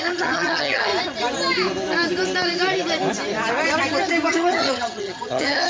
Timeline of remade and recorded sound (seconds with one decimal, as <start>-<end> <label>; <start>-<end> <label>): 0.0-0.9 remade; 0.9-4.3 recorded; 4.3-5.7 remade